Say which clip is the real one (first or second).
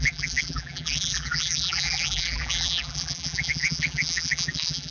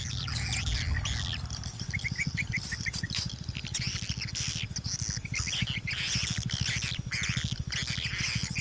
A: second